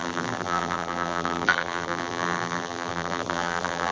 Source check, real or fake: fake